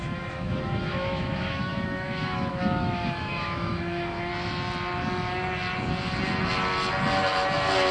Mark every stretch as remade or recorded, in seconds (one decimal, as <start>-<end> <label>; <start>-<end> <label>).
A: 0.0-4.3 remade; 4.3-7.9 recorded

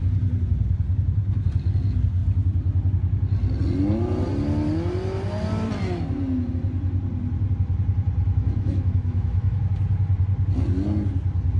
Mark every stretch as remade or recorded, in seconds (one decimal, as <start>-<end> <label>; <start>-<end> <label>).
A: 0.0-8.3 recorded; 8.3-9.6 remade; 9.6-11.6 recorded

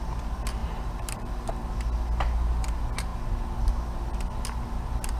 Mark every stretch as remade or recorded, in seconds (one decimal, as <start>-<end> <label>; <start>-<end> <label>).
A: 0.0-0.6 recorded; 0.6-1.5 remade; 1.5-5.2 recorded